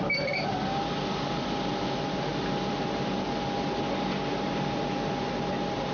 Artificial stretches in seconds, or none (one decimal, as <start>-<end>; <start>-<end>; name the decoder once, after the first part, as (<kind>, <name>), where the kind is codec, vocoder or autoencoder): none